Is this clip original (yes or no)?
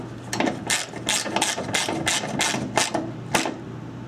yes